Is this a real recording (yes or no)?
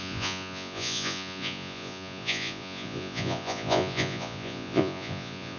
no